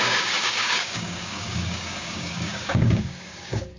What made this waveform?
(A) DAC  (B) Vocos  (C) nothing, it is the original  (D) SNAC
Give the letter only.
A